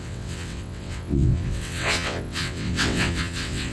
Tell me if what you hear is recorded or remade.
remade